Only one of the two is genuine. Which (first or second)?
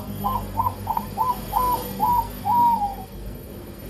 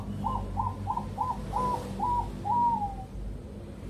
second